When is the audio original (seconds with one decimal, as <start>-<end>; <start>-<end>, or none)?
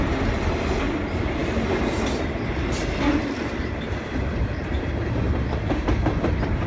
0.0-6.7